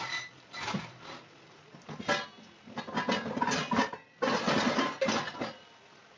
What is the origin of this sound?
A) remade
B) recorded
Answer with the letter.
B